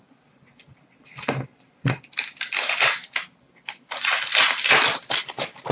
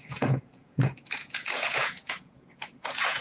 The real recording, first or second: first